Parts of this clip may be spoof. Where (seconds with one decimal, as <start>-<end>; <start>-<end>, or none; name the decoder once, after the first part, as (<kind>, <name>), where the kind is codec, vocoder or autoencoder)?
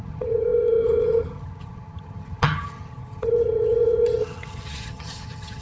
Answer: 0.0-5.6 (vocoder, HiFi-GAN)